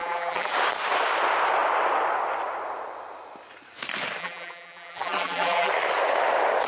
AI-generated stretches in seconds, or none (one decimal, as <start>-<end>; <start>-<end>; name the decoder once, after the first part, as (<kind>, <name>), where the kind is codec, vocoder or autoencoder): 0.0-0.5 (vocoder, BigVGAN v2); 4.2-5.7